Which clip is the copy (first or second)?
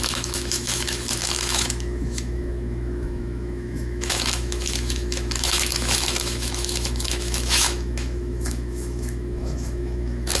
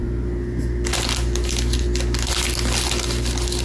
first